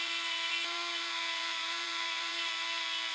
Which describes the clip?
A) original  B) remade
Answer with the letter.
B